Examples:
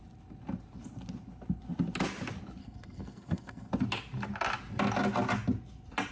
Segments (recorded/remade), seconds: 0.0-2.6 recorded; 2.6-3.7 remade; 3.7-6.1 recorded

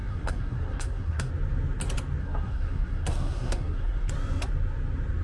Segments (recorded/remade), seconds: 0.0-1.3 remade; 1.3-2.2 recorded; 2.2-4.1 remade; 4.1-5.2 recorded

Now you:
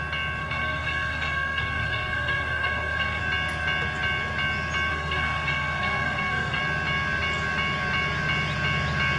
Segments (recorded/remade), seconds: 0.0-0.4 recorded; 0.4-3.2 remade; 3.2-4.9 recorded; 4.9-6.6 remade; 6.6-9.2 recorded

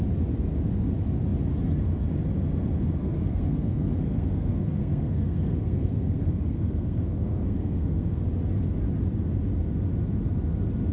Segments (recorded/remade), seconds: 0.0-3.0 recorded; 3.0-8.2 remade; 8.2-10.9 recorded

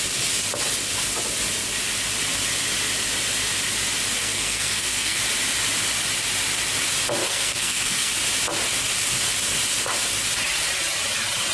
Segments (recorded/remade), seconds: 0.0-4.2 recorded; 4.2-5.2 remade; 5.2-7.2 recorded; 7.2-8.1 remade; 8.1-11.5 recorded